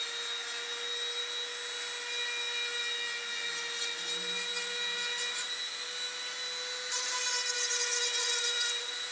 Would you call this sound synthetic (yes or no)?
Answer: no